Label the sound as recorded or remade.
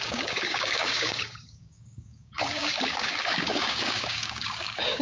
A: remade